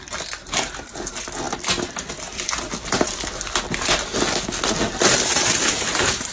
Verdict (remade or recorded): recorded